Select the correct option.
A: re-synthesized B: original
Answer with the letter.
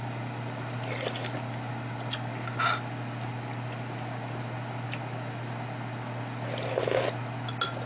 B